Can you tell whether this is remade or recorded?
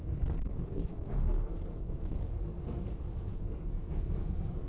remade